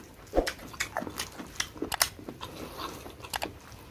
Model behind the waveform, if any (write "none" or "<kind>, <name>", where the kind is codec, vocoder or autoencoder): none